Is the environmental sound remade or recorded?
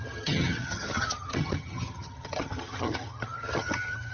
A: remade